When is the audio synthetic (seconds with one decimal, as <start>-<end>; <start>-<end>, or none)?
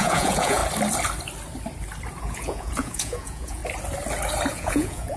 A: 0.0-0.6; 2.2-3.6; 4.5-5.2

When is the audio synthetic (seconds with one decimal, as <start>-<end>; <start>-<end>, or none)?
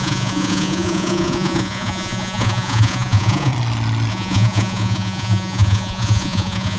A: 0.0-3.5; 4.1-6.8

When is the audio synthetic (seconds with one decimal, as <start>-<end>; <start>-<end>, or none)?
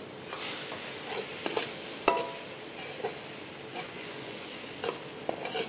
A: 3.7-4.5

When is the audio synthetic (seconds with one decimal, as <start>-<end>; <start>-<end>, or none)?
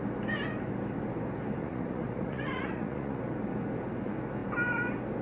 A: 1.6-3.2